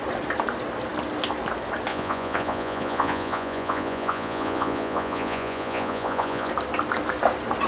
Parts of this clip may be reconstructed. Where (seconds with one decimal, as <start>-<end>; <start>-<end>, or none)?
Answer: 1.9-6.5